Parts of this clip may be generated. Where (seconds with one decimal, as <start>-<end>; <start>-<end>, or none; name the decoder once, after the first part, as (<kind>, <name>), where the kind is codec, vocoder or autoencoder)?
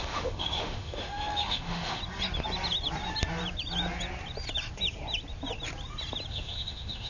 0.0-2.0 (autoencoder, DAC-VAE); 6.3-7.1